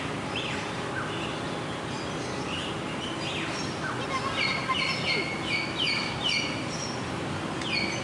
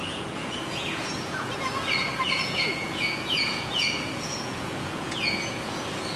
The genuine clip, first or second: first